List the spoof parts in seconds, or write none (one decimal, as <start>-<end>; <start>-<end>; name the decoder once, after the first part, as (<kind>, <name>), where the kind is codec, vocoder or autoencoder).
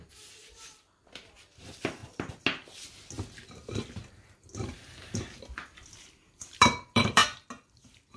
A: 0.0-2.0 (vocoder, BigVGAN v2); 6.4-7.2